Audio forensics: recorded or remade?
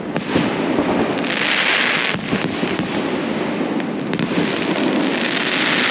recorded